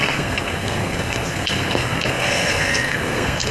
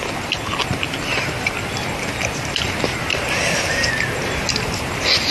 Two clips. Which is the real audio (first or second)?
second